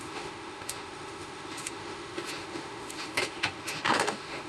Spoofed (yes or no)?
yes